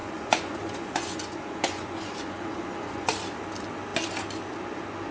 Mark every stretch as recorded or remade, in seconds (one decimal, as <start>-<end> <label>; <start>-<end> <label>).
0.0-3.1 remade; 3.1-5.1 recorded